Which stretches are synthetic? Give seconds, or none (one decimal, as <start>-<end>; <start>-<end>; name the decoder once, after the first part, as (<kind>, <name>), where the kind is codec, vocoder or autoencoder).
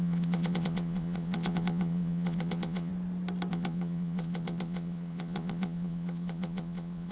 0.0-2.9 (vocoder, Vocos); 3.5-7.1